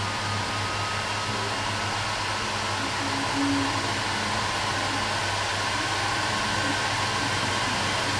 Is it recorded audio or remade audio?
recorded